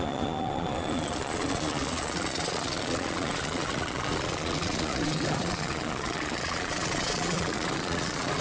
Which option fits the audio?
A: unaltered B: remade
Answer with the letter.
B